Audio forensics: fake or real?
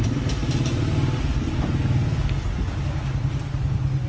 real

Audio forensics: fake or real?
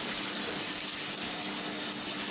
real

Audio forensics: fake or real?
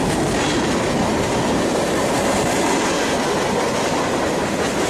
real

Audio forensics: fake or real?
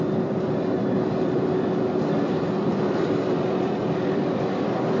real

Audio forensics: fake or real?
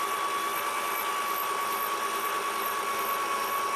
real